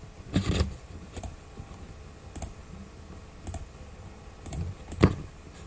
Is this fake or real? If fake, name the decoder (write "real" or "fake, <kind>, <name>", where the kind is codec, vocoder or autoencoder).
real